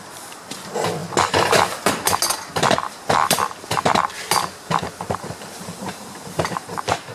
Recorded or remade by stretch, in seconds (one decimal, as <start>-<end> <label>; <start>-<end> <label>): 0.0-1.0 remade; 1.0-2.7 recorded; 2.7-7.1 remade